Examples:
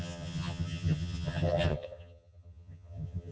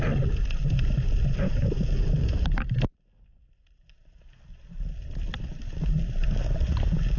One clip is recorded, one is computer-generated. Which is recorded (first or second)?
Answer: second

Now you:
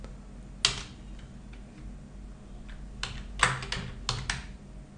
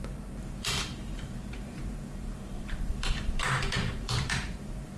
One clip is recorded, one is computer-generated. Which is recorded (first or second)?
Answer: first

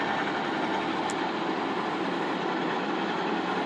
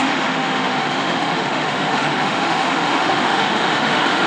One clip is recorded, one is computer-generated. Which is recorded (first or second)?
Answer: first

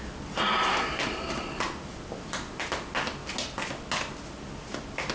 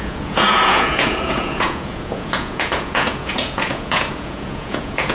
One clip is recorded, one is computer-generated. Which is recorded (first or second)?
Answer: first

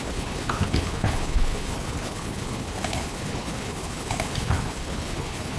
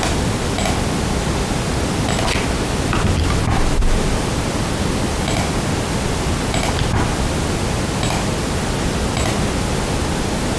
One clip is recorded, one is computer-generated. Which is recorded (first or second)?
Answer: second